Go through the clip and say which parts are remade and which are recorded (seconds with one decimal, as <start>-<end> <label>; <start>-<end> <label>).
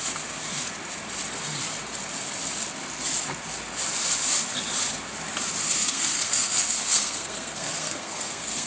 0.0-5.6 recorded; 5.6-8.7 remade